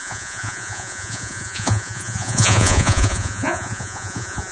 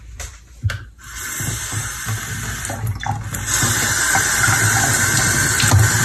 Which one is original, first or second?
second